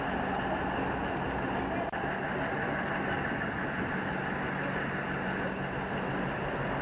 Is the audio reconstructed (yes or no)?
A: no